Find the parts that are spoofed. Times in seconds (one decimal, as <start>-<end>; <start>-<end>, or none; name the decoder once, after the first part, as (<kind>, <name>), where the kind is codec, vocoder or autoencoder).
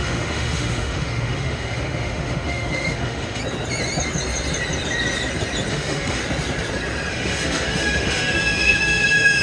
0.0-3.4 (autoencoder, DAC-VAE); 5.7-6.2; 7.1-9.4